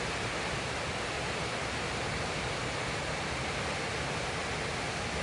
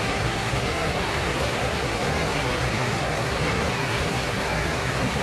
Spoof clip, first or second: second